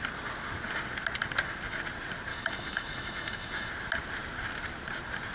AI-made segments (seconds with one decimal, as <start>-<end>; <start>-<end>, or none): 2.3-3.7